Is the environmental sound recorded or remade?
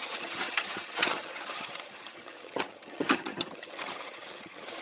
remade